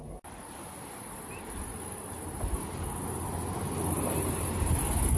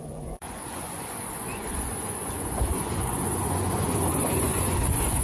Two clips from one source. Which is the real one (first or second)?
first